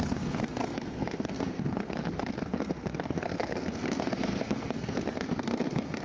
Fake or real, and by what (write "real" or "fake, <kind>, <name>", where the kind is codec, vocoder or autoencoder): fake, codec, SNAC